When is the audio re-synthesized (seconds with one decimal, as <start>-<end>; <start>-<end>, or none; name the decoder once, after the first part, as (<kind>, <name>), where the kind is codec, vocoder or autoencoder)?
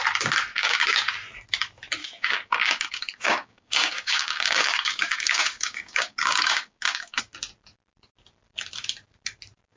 0.5-1.0 (codec, DAC); 2.0-7.2